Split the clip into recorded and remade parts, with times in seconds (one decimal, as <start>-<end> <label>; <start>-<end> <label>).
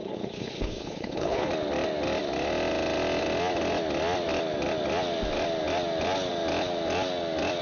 0.0-1.5 remade; 1.5-7.6 recorded